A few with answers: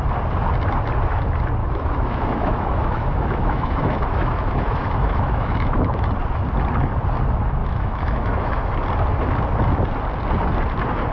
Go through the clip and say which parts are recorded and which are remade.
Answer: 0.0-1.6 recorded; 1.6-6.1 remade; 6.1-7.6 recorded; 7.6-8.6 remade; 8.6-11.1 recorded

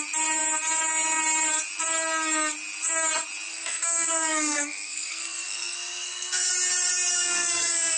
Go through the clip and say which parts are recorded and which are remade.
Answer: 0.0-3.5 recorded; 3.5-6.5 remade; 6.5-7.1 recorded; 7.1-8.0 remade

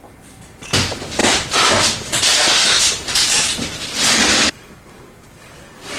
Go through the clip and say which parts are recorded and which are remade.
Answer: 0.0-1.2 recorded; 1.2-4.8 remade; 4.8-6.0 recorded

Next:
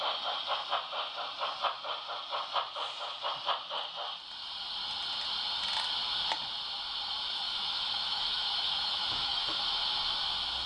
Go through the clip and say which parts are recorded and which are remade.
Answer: 0.0-7.2 recorded; 7.2-9.6 remade; 9.6-10.7 recorded

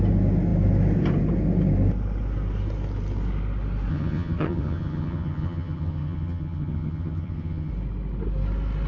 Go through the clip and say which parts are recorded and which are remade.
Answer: 0.0-3.9 recorded; 3.9-7.7 remade; 7.7-8.9 recorded

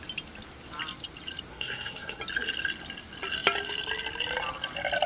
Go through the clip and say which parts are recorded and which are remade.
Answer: 0.0-1.5 recorded; 1.5-2.2 remade; 2.2-5.1 recorded